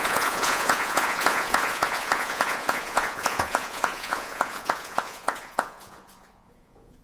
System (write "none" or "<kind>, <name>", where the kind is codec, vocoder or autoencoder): vocoder, Vocos